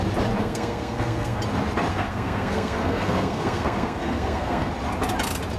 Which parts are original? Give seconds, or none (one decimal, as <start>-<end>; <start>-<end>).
0.0-0.4; 1.4-1.9; 4.7-5.6

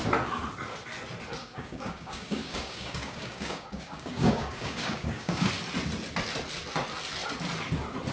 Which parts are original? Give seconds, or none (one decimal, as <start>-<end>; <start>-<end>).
0.0-1.4; 5.5-8.1

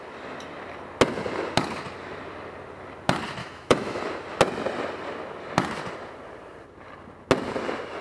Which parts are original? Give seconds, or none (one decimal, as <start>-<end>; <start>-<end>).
0.0-3.4; 4.0-8.0

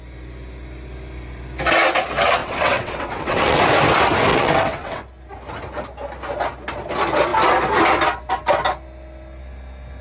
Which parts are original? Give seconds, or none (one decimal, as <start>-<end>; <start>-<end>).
0.0-2.4; 3.6-4.3; 5.0-10.0

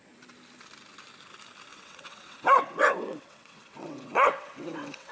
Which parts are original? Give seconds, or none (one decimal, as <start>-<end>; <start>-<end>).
0.0-1.7